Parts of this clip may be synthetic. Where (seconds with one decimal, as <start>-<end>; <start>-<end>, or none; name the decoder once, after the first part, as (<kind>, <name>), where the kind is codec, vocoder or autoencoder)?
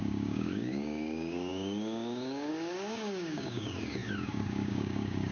0.0-5.3 (codec, DAC)